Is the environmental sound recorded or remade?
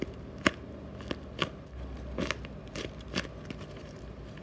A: recorded